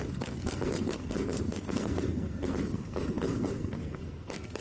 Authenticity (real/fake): fake